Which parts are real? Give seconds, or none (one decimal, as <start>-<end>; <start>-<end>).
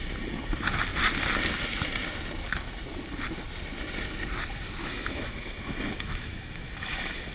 0.0-4.8